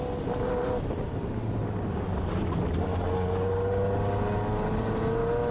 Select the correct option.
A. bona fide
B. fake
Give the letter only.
A